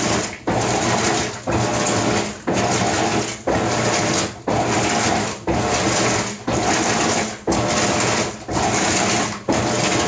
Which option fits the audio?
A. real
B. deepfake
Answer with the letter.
A